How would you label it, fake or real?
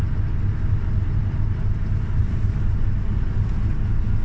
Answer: real